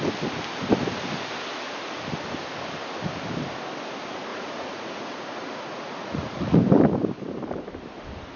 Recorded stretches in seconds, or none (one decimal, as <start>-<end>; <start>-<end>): 0.0-4.3; 6.6-8.4